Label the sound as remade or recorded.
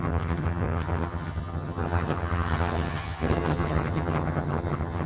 remade